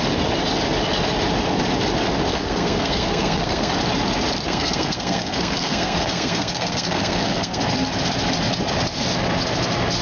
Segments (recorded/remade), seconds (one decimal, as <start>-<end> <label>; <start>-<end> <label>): 0.0-2.3 recorded; 2.3-3.7 remade; 3.7-4.5 recorded; 4.5-7.6 remade; 7.6-10.0 recorded